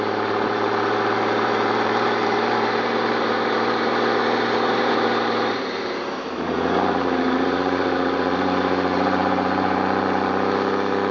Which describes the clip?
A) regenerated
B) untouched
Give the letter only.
A